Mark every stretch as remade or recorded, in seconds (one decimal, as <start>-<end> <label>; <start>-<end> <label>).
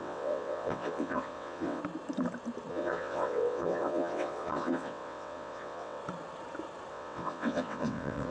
0.0-1.8 remade; 1.8-2.7 recorded; 2.7-6.0 remade; 6.0-6.9 recorded; 6.9-8.3 remade